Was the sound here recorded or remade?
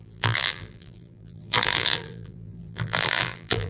remade